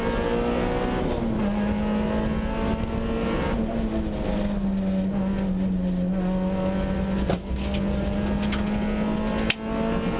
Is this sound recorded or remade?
recorded